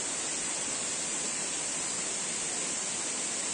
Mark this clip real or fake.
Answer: real